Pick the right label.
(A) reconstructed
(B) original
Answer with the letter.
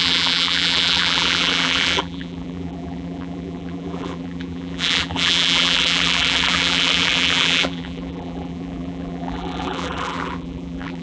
A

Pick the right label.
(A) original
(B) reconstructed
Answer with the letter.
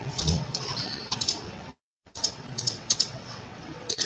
B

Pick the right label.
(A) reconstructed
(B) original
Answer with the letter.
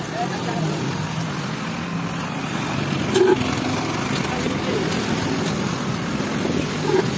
B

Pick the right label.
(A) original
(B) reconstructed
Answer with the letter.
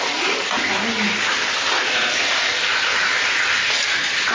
A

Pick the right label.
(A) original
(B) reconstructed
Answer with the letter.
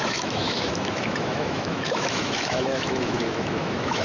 B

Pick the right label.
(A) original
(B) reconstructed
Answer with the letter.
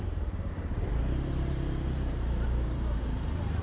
B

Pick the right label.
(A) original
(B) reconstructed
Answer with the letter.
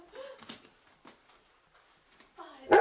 A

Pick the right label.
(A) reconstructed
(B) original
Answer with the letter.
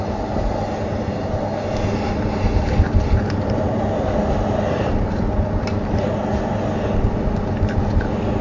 B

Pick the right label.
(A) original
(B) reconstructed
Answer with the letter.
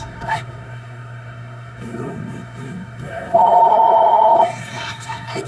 B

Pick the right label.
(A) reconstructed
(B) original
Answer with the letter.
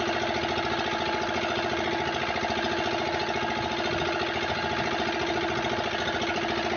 B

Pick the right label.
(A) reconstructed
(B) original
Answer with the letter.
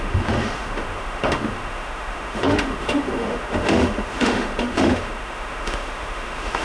A